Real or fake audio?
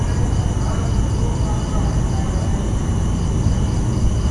real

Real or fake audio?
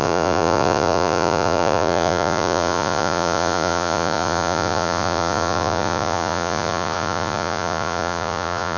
fake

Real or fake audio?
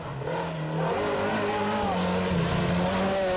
real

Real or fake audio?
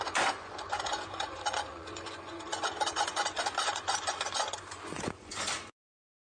fake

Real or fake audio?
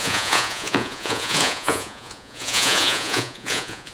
fake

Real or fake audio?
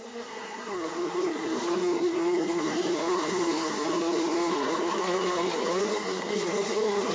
fake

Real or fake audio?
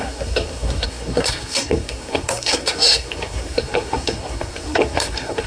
fake